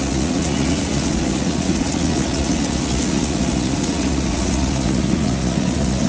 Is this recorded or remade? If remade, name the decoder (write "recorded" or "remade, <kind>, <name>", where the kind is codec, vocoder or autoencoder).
remade, vocoder, Vocos